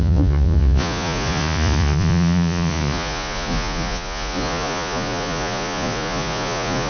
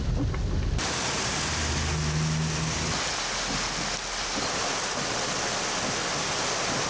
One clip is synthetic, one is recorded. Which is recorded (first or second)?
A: second